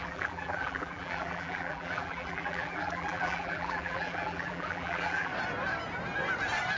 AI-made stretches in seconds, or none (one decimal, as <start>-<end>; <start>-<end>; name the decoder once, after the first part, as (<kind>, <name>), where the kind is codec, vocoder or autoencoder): 0.0-5.3 (vocoder, BigVGAN v2)